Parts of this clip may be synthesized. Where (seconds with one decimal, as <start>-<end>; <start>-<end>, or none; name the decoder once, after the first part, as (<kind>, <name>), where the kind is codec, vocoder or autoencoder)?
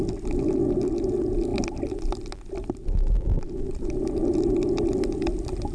none